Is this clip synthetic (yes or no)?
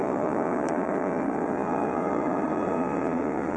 yes